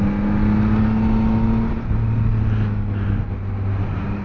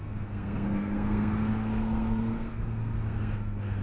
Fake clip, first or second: second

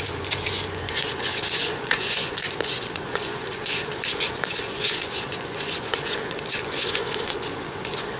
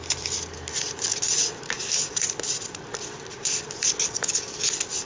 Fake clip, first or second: first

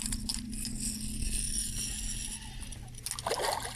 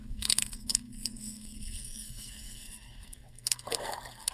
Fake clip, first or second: second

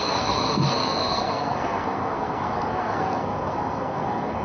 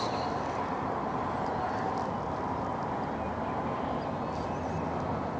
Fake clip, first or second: first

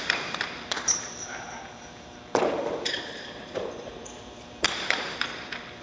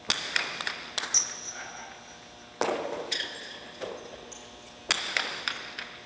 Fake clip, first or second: first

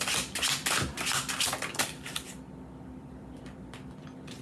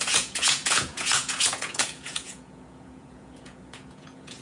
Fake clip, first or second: second